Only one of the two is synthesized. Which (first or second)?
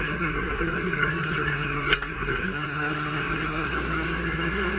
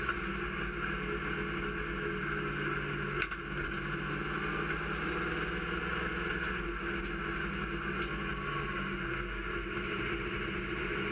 first